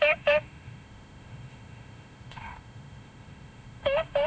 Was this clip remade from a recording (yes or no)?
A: yes